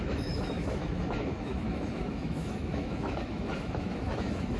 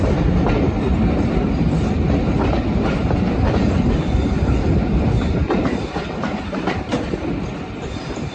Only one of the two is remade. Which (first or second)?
first